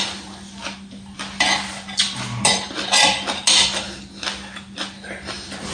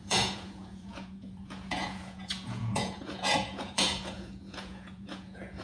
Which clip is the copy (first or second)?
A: second